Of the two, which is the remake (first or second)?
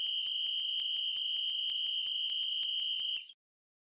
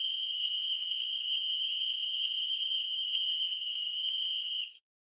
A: second